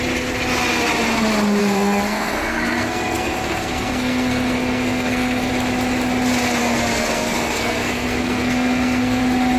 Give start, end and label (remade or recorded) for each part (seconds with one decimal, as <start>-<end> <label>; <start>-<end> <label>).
0.0-1.6 recorded; 1.6-5.5 remade; 5.5-6.6 recorded; 6.6-9.2 remade; 9.2-9.6 recorded